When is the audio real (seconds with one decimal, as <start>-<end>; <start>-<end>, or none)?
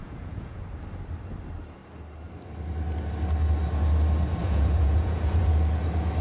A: 0.6-4.4; 5.5-6.2